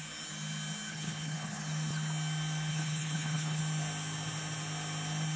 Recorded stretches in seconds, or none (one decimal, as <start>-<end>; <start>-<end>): 0.0-0.9; 1.6-2.7; 3.6-5.4

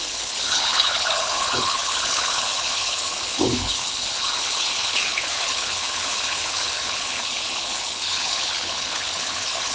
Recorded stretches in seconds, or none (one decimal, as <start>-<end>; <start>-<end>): none

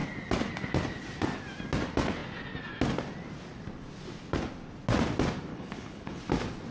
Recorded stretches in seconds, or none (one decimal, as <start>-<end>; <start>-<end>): 0.0-5.5; 6.2-6.7

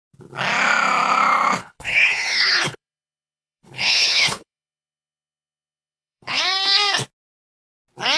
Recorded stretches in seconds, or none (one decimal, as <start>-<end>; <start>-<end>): 0.0-1.6; 6.4-8.2

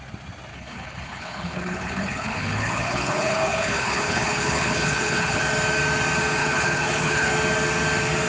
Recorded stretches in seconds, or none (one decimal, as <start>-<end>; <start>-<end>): 0.0-0.5; 5.4-6.4; 7.3-8.3

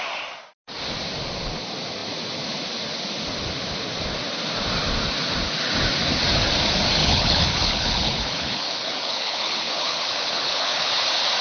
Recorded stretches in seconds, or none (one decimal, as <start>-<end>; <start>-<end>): 0.0-7.0; 10.9-11.4

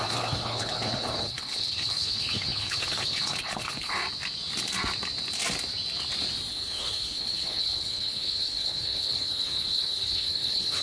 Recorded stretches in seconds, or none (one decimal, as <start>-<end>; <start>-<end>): 4.0-6.5

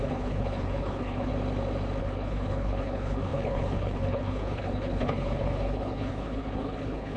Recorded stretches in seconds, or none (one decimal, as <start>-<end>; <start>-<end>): 1.3-2.0